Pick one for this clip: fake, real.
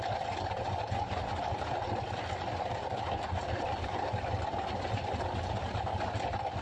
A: fake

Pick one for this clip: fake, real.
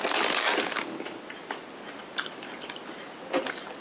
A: real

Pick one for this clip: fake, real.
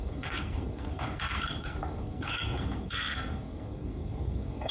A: fake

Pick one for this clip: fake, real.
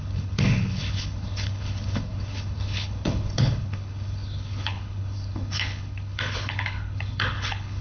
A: fake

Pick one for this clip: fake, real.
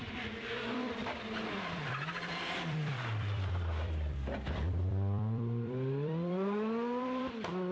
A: fake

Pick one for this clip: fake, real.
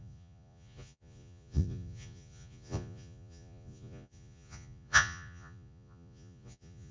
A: fake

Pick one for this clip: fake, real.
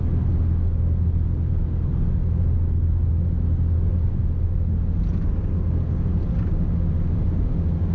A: real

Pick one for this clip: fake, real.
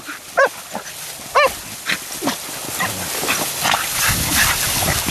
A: real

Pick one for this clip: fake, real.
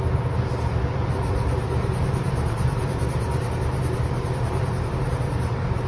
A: fake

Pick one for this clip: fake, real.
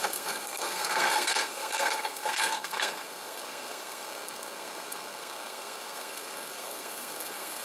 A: fake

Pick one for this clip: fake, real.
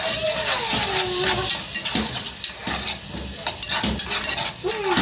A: real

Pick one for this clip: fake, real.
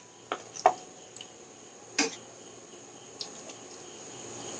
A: real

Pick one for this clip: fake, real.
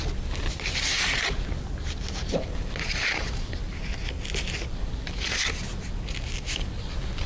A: real